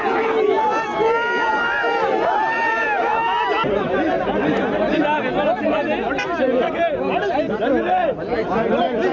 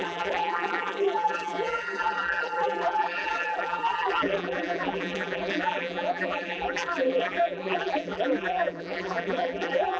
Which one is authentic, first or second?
first